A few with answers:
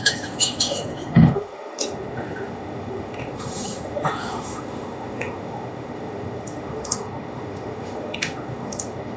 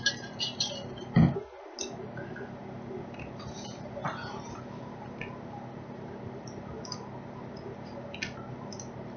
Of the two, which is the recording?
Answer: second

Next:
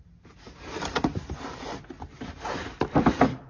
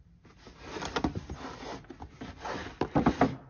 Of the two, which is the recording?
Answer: second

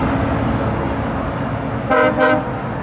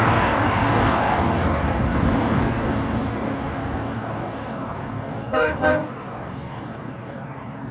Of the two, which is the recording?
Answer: first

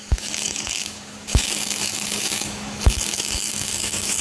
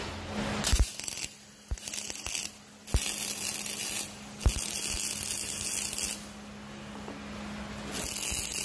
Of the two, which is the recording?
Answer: second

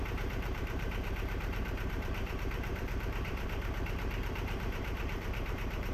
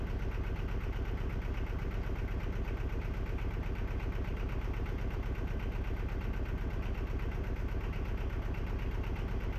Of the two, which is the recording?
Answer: second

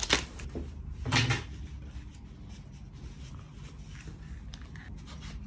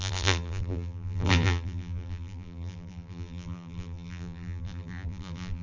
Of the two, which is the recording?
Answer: first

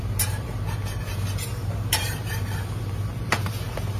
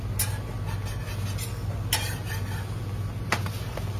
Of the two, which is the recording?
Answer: second